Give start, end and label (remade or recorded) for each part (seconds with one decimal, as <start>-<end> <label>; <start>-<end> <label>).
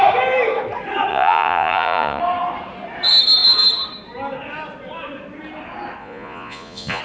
0.0-1.1 recorded; 1.1-2.2 remade; 2.2-6.0 recorded; 6.0-7.0 remade